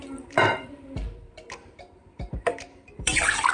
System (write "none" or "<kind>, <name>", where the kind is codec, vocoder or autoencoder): vocoder, BigVGAN v2